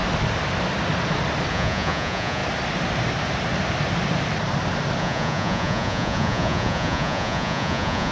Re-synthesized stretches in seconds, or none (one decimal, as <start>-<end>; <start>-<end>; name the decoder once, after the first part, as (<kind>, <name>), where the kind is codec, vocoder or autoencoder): 1.5-2.4 (vocoder, Vocos); 5.0-8.1